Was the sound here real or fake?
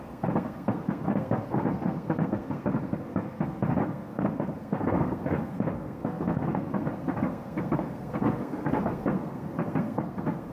fake